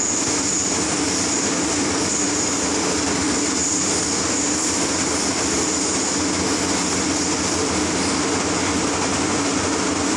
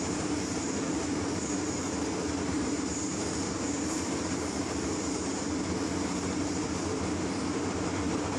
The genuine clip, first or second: first